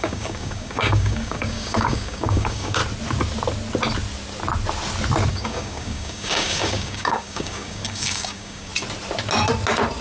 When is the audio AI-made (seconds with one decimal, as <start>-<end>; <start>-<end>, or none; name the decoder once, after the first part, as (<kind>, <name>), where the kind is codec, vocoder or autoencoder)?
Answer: 0.0-2.8 (codec, DAC); 5.3-8.7